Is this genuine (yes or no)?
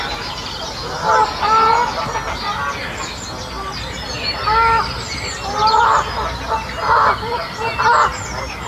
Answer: yes